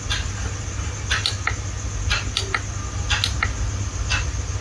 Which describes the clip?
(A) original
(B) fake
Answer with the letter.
A